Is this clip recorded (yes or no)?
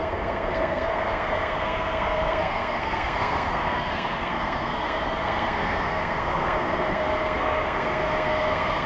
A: no